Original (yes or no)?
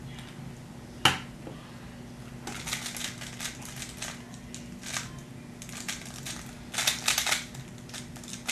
yes